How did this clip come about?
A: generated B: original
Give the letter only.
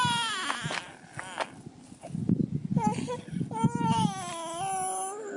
B